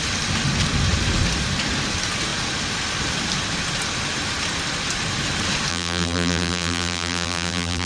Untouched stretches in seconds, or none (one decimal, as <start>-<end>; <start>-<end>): 0.0-5.7